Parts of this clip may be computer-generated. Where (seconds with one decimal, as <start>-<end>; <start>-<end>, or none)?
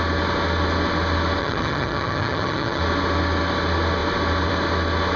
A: 1.4-2.8